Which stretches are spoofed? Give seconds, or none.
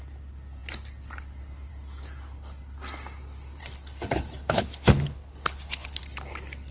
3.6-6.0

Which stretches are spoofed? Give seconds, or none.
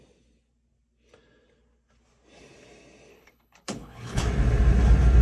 3.1-4.2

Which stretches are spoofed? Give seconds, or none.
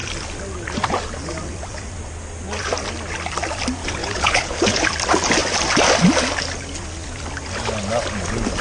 4.0-4.8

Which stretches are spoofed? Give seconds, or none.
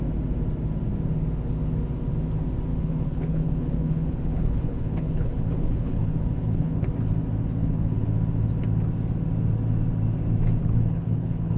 2.7-6.9; 7.6-8.1; 10.6-11.6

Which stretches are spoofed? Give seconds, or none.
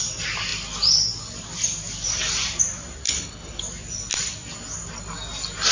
3.0-3.6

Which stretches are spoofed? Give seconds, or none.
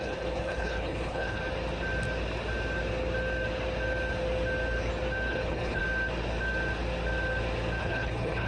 0.0-1.4; 5.3-5.8; 7.8-8.5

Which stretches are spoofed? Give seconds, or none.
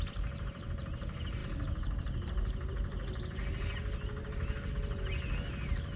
none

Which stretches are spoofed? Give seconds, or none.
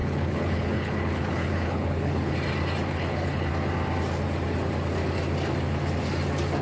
0.0-2.3; 2.9-3.5